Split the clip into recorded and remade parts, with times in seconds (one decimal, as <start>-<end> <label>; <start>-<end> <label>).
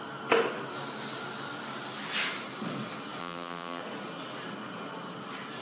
0.0-3.2 recorded; 3.2-3.8 remade; 3.8-5.6 recorded